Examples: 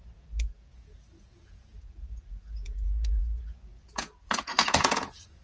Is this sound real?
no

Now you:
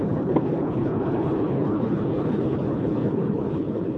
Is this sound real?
no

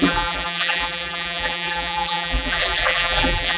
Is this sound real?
no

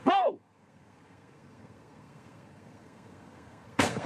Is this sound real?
no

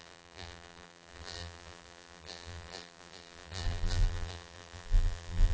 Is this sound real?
no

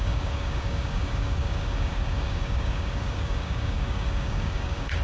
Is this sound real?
no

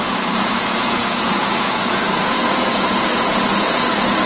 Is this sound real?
no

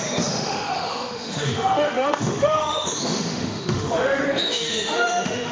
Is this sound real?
no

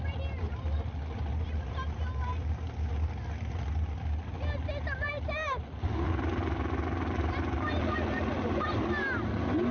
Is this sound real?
yes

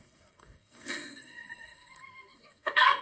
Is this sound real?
no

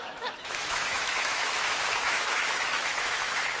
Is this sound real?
no